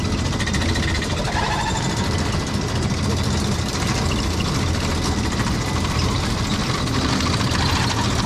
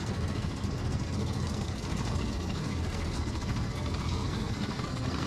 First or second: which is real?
first